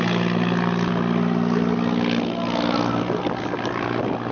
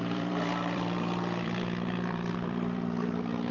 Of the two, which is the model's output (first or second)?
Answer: second